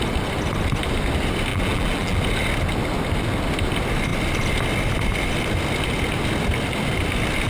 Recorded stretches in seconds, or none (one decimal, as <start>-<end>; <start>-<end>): 0.0-1.5; 2.2-7.5